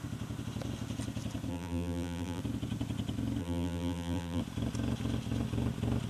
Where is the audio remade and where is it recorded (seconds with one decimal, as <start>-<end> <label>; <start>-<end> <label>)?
0.0-1.5 recorded; 1.5-2.4 remade; 2.4-3.4 recorded; 3.4-4.4 remade; 4.4-6.1 recorded